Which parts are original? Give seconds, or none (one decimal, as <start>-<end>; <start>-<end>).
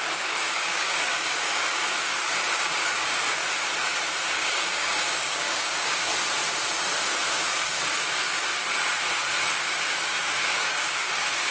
3.4-4.3; 6.1-7.3; 8.5-9.5